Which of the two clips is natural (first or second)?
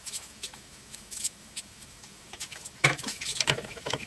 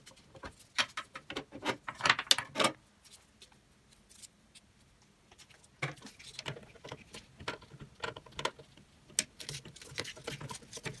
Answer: second